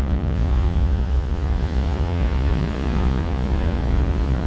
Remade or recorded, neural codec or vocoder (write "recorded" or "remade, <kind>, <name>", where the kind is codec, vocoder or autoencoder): remade, vocoder, Vocos